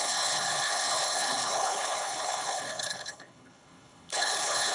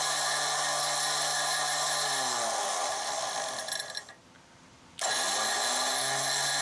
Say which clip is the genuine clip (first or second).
second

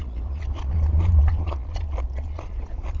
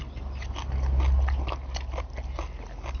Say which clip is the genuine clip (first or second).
second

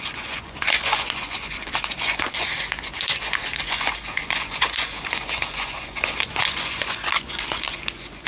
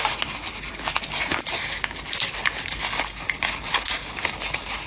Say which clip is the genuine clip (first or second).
second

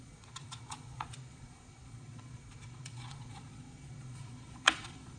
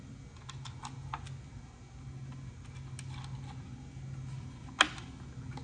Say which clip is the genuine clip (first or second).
second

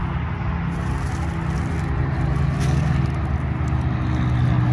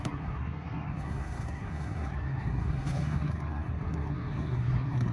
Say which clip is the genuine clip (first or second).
first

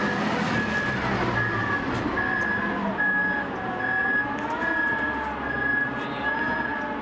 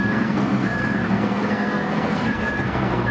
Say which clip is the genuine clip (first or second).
first